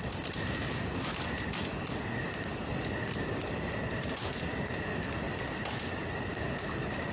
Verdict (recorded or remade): recorded